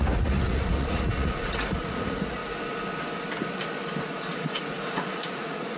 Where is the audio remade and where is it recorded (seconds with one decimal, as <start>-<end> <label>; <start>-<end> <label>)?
0.0-2.4 remade; 2.4-4.0 recorded; 4.0-5.8 remade